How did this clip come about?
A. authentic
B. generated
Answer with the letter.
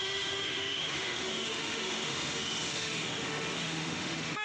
B